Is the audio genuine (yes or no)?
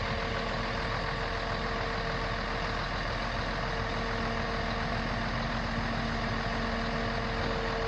yes